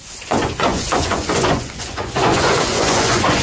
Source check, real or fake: fake